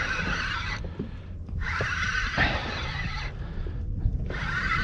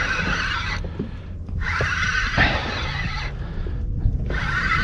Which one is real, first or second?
second